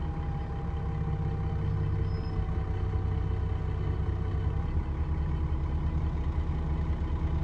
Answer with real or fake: real